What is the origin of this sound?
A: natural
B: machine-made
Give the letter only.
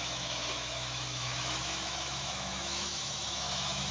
B